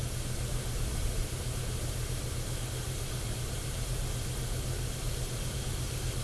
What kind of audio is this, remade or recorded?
remade